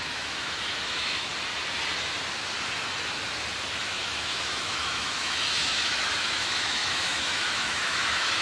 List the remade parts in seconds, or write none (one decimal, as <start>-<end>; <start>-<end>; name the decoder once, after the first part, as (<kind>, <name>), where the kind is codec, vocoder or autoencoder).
0.0-1.3 (autoencoder, DAC-VAE); 3.8-8.4